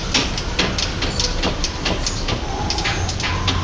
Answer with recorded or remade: recorded